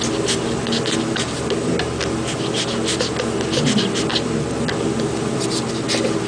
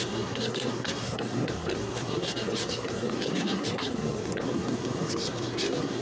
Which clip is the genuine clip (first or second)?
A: first